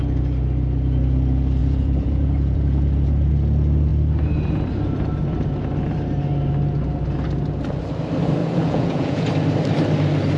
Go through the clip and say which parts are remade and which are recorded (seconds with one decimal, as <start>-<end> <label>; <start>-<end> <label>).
0.0-1.6 recorded; 1.6-3.3 remade; 3.3-8.4 recorded; 8.4-9.3 remade; 9.3-10.4 recorded